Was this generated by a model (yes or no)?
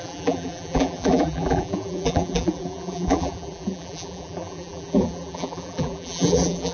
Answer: yes